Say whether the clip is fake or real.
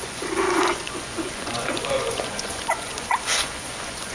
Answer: fake